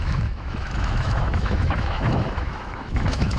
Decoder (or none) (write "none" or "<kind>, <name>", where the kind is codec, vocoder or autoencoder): autoencoder, DAC-VAE